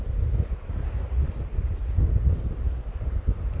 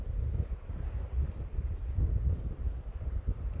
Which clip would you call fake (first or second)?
second